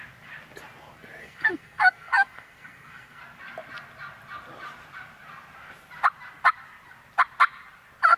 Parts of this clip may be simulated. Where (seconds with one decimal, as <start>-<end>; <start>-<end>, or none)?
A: 1.2-3.2